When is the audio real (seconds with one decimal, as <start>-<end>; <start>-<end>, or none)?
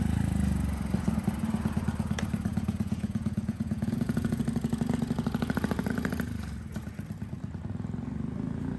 0.0-2.5; 4.4-8.8